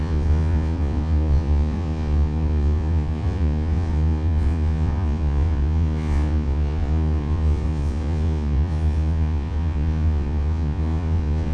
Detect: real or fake fake